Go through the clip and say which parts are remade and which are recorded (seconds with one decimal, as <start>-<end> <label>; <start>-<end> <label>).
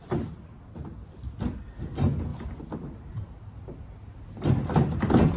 0.0-5.4 recorded